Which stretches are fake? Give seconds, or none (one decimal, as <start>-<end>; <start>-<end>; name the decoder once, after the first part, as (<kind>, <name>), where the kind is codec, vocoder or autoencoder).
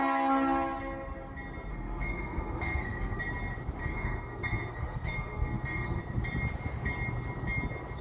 1.7-3.2 (codec, SNAC); 3.8-6.0